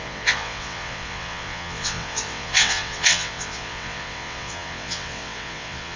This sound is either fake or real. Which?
fake